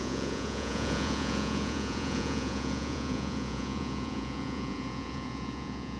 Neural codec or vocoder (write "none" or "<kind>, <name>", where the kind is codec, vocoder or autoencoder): vocoder, Vocos